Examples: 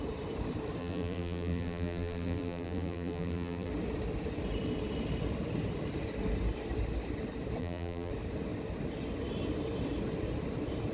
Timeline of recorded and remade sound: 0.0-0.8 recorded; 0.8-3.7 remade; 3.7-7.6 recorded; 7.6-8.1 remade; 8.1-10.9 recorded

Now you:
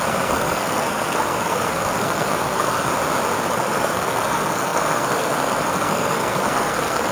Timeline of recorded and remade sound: 0.0-2.9 remade; 2.9-3.5 recorded; 3.5-7.1 remade

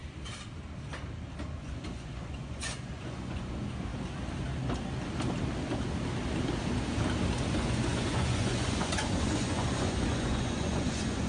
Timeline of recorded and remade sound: 0.0-1.6 recorded; 1.6-3.9 remade; 3.9-7.4 recorded; 7.4-11.3 remade

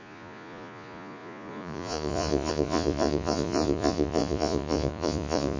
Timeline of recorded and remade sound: 0.0-5.6 remade